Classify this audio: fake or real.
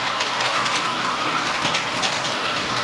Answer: fake